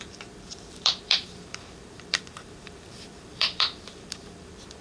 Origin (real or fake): fake